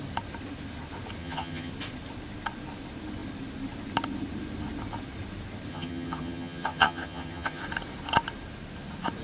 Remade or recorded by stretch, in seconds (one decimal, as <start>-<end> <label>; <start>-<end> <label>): 0.0-1.2 recorded; 1.2-1.7 remade; 1.7-5.7 recorded; 5.7-7.6 remade; 7.6-9.2 recorded